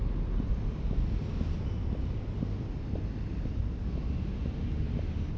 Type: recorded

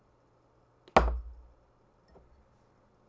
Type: recorded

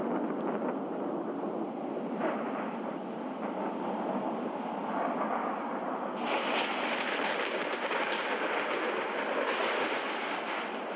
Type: recorded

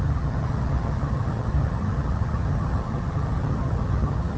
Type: remade